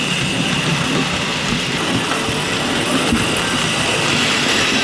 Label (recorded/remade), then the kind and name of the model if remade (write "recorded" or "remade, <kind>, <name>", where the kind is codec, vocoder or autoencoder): recorded